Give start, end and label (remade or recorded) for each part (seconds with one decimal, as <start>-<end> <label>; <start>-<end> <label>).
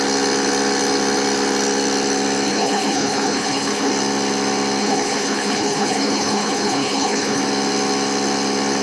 0.0-2.5 recorded; 2.5-3.9 remade; 3.9-4.8 recorded; 4.8-7.4 remade; 7.4-8.8 recorded